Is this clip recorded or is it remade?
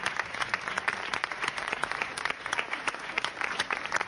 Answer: remade